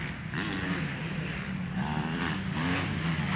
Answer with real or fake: real